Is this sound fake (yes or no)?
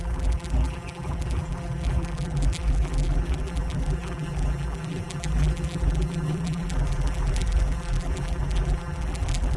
yes